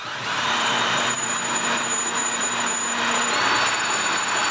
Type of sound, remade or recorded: recorded